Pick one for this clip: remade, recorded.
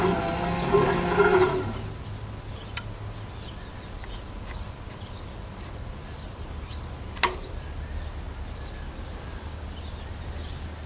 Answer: recorded